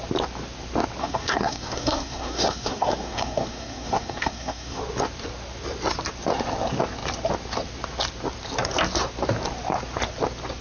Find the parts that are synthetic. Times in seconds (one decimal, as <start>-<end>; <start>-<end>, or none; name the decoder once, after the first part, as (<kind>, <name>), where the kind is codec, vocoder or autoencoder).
1.0-4.8 (codec, SNAC)